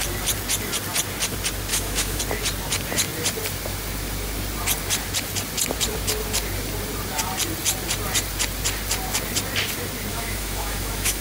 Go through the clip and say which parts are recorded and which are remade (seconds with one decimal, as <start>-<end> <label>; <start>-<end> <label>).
0.0-1.7 recorded; 1.7-2.2 remade; 2.2-10.1 recorded; 10.1-11.2 remade